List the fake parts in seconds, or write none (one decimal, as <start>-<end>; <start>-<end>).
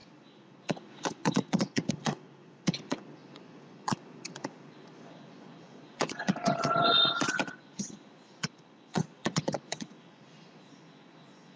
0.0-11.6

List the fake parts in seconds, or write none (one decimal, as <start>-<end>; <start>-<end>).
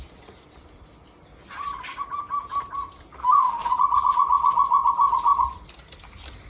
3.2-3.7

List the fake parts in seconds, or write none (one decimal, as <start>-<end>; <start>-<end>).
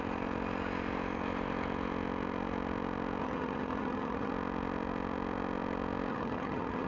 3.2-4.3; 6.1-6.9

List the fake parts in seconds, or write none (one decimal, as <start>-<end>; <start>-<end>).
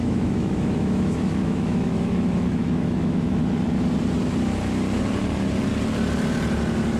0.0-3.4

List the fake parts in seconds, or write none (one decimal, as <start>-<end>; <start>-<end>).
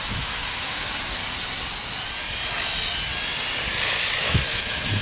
0.0-1.2; 4.2-5.0